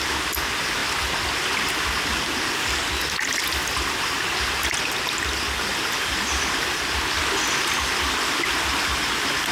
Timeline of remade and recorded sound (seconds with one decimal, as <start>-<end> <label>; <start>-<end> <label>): 0.0-9.5 recorded